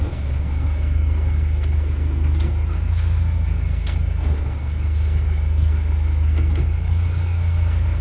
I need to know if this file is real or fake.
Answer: fake